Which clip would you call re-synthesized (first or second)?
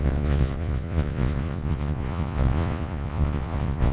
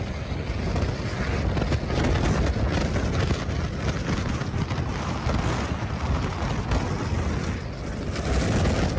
first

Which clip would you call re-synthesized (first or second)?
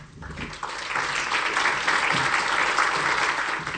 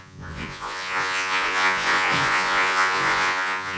second